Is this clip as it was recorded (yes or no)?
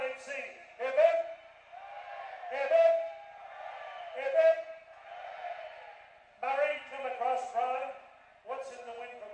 yes